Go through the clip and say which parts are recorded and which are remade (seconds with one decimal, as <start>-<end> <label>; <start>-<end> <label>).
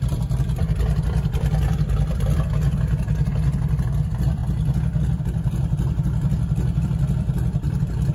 0.0-2.6 remade; 2.6-3.7 recorded; 3.7-4.4 remade; 4.4-5.2 recorded; 5.2-8.1 remade